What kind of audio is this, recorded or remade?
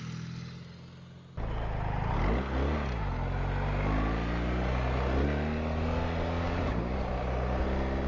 recorded